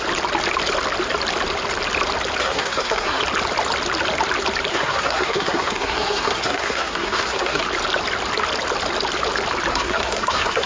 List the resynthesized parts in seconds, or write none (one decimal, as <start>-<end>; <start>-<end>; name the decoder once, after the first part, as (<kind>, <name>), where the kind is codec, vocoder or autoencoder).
2.4-3.2 (codec, SNAC); 4.7-7.6; 9.7-10.7